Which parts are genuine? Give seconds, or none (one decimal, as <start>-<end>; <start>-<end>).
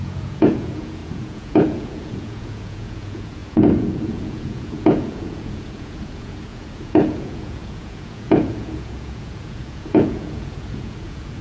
none